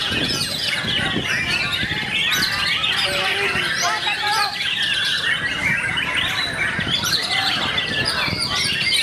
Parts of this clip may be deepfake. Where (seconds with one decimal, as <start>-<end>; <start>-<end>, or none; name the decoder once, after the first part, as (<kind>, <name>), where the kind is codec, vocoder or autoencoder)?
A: 0.0-0.6 (vocoder, Vocos)